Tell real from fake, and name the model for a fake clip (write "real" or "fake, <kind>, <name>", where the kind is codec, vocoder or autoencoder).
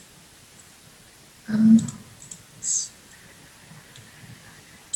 real